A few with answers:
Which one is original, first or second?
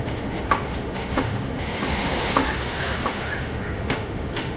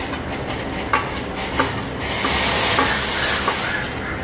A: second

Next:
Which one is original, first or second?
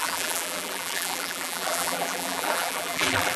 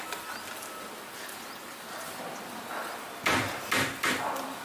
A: second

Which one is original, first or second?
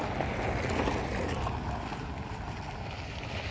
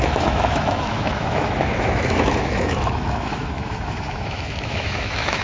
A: first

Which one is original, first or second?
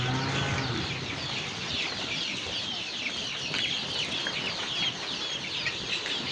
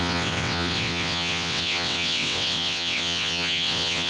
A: first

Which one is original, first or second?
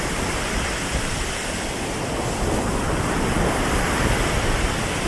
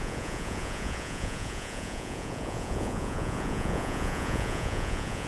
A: first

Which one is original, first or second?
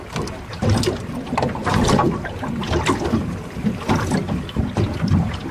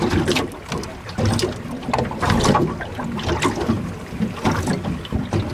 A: second